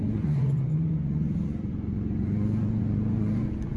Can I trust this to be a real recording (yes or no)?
no